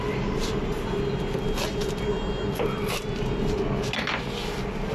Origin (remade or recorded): recorded